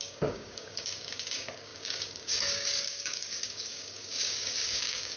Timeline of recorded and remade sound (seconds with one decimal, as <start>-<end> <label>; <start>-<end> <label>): 0.0-5.2 remade